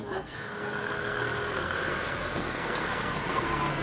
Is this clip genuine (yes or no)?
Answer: no